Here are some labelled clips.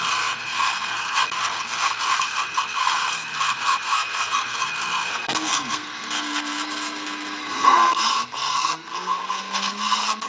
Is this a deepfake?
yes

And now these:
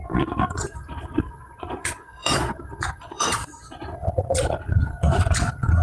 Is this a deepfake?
yes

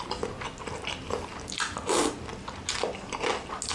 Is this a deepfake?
no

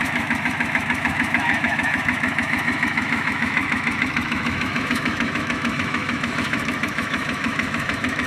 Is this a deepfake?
yes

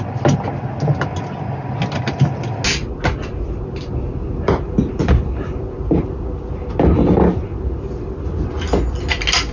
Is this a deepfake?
no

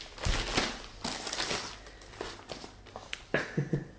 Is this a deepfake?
no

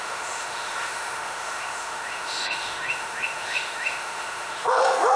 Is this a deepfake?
yes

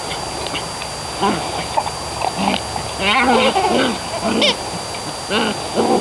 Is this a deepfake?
no